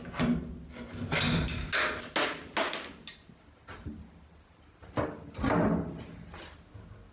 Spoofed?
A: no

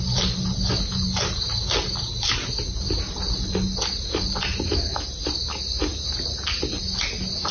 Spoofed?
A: no